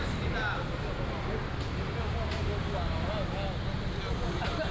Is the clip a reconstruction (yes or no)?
no